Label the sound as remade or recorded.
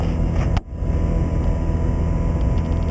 recorded